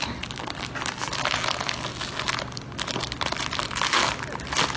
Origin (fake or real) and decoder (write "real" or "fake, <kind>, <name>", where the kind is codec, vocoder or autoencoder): real